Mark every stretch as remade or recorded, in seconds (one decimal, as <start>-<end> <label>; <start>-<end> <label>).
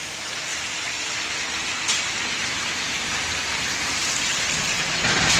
0.0-0.5 remade; 0.5-2.3 recorded; 2.3-5.4 remade